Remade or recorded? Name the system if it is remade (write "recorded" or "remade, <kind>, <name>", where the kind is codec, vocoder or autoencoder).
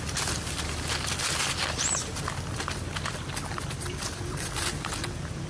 recorded